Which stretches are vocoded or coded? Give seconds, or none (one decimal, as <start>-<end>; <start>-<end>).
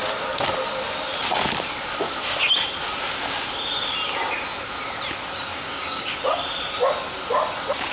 5.5-6.1